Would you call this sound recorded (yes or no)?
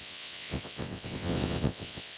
no